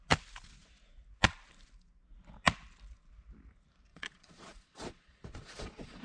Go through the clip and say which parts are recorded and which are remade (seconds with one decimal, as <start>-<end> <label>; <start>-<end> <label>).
0.0-3.9 recorded; 3.9-6.0 remade